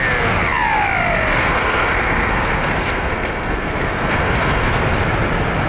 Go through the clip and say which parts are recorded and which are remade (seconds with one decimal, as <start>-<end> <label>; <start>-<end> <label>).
0.0-1.4 recorded; 1.4-4.8 remade; 4.8-5.7 recorded